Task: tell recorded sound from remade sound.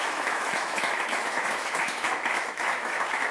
remade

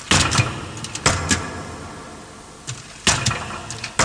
recorded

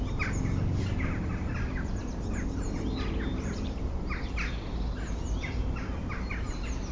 recorded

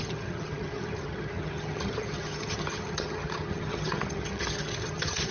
remade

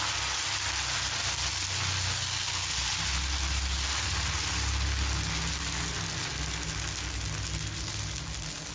recorded